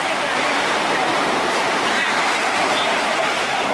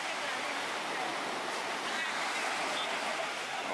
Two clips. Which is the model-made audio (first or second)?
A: first